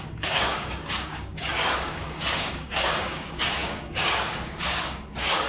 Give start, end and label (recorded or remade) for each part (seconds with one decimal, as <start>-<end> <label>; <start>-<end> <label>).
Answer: 0.0-5.5 remade